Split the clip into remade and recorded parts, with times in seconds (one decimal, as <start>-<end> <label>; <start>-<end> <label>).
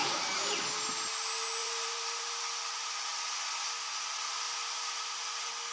0.0-0.6 remade; 0.6-1.6 recorded; 1.6-2.4 remade; 2.4-5.7 recorded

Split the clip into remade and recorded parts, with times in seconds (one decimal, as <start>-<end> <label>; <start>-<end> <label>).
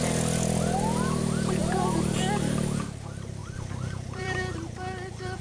0.0-1.6 recorded; 1.6-2.2 remade; 2.2-3.4 recorded; 3.4-4.6 remade; 4.6-5.4 recorded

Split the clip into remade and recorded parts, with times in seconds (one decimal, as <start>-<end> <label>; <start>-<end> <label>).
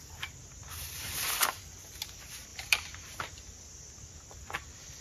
0.0-0.4 recorded; 0.4-1.1 remade; 1.1-2.5 recorded; 2.5-3.2 remade; 3.2-5.0 recorded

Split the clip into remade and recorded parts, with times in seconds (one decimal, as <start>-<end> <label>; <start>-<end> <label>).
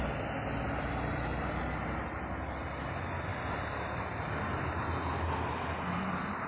0.0-3.3 recorded; 3.3-4.9 remade; 4.9-6.5 recorded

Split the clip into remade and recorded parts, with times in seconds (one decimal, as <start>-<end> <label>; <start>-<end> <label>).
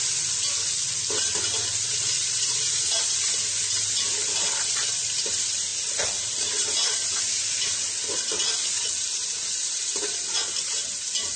0.0-9.6 recorded; 9.6-10.3 remade; 10.3-11.4 recorded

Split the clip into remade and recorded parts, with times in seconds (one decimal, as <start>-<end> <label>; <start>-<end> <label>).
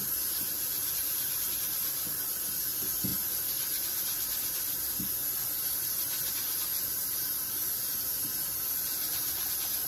0.0-1.5 remade; 1.5-6.7 recorded; 6.7-9.5 remade; 9.5-9.9 recorded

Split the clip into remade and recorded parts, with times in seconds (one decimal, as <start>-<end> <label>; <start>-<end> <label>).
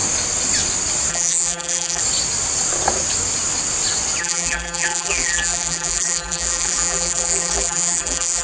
0.0-1.1 recorded; 1.1-2.0 remade; 2.0-4.2 recorded; 4.2-8.4 remade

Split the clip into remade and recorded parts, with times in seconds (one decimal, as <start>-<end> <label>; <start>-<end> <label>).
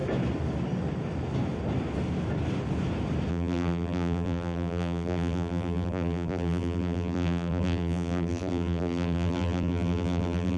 0.0-3.3 recorded; 3.3-10.6 remade